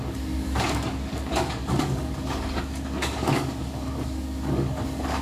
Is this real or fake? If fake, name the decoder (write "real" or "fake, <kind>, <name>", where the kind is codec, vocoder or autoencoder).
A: fake, codec, DAC